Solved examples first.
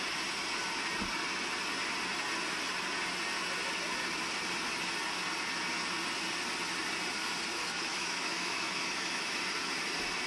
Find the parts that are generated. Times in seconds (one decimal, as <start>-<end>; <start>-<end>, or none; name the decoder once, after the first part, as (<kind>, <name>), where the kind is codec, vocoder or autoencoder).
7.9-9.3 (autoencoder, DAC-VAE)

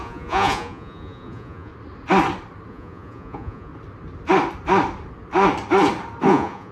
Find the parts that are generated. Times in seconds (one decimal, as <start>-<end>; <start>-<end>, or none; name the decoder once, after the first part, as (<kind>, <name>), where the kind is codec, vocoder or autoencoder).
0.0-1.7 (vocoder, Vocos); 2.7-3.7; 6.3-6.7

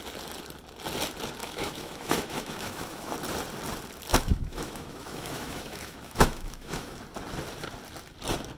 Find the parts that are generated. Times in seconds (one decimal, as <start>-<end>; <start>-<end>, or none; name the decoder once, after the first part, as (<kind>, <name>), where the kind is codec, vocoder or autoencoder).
1.4-3.1 (autoencoder, DAC-VAE); 4.1-7.0